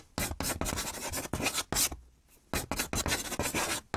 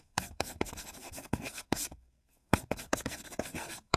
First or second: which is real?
first